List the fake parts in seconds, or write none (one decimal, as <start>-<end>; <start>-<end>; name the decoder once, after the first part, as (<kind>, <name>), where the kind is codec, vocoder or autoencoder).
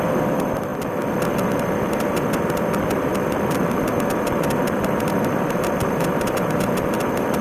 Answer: 0.0-0.7 (vocoder, BigVGAN v2); 1.6-7.4